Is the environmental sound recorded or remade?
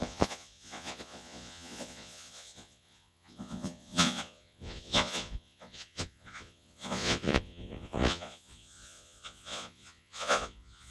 remade